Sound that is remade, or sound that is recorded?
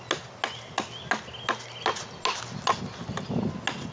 recorded